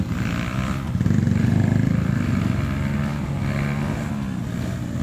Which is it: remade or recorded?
recorded